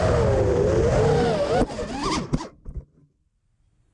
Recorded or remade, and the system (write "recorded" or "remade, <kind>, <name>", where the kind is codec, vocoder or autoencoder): recorded